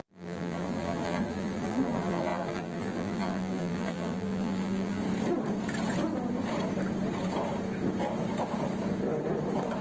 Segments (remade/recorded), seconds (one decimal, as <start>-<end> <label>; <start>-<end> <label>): 0.0-5.0 remade; 5.0-9.8 recorded